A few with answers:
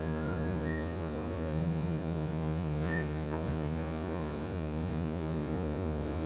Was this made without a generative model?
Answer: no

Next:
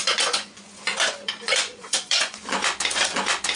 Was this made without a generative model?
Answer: no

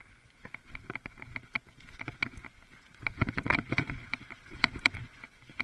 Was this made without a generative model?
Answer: no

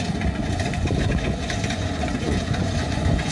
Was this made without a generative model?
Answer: no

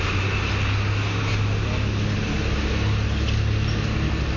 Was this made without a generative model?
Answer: yes